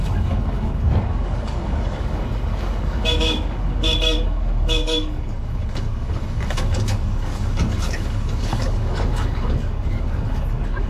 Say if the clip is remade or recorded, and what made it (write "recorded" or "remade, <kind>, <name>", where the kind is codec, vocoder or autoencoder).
remade, codec, DAC